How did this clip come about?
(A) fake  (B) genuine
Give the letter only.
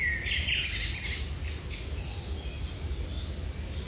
B